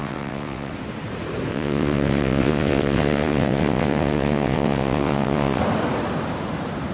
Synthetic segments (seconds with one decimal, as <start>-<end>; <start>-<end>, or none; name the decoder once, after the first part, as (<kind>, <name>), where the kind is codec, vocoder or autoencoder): 0.0-0.7 (vocoder, WaveNeXt); 1.5-5.6